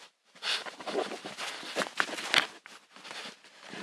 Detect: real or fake real